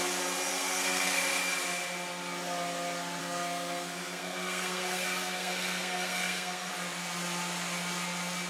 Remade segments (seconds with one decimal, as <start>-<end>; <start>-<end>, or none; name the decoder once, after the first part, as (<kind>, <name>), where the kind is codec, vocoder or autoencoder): 0.5-1.2 (codec, SNAC); 3.2-6.7